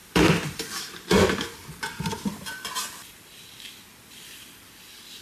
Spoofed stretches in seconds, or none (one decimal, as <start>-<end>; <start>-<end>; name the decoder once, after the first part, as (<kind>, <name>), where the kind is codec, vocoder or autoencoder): 0.0-5.2 (vocoder, BigVGAN v2)